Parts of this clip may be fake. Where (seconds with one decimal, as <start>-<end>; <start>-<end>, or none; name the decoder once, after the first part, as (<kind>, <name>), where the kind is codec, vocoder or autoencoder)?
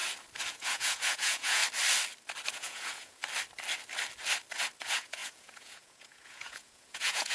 0.5-1.6 (vocoder, Vocos); 2.5-3.2; 4.8-7.3